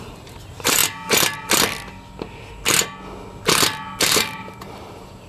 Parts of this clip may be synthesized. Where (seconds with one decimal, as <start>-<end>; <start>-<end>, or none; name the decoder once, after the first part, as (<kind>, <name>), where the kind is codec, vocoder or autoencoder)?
0.0-0.8 (vocoder, BigVGAN v2); 4.0-5.3